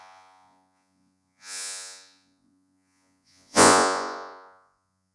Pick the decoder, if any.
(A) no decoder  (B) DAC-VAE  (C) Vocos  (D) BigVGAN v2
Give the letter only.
C